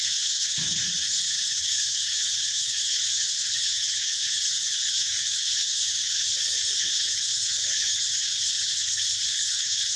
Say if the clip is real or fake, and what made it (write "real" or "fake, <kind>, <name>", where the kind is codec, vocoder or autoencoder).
fake, codec, HILCodec